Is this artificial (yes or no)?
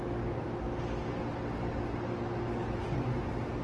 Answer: no